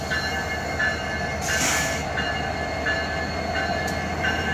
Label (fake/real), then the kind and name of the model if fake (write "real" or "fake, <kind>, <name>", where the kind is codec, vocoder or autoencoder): real